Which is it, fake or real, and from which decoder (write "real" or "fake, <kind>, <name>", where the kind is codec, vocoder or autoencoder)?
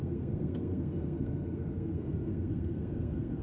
fake, codec, SNAC